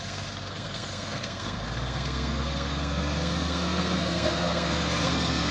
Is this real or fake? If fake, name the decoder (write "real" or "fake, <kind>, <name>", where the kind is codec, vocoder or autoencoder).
fake, codec, SNAC